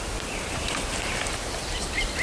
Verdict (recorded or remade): recorded